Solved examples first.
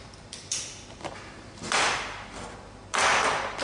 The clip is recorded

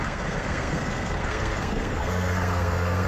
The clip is remade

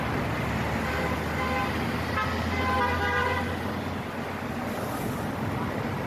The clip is recorded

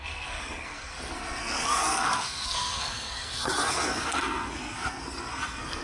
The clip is remade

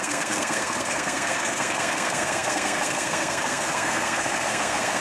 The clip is remade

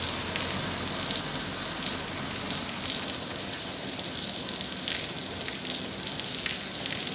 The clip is recorded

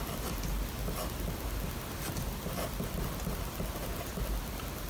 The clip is recorded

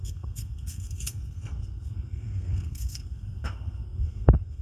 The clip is remade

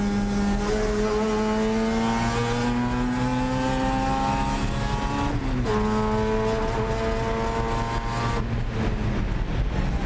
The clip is recorded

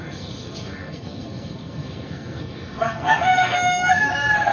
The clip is remade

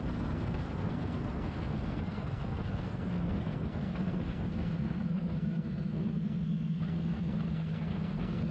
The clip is remade